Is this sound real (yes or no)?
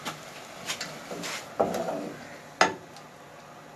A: yes